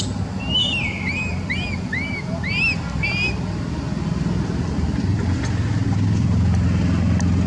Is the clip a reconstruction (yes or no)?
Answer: no